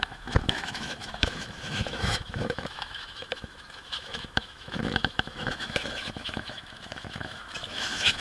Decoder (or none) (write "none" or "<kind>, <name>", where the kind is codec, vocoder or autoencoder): autoencoder, DAC-VAE